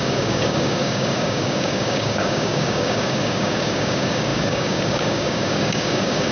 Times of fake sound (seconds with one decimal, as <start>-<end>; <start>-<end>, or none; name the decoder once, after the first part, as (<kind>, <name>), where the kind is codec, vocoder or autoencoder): 0.0-6.3 (codec, DAC)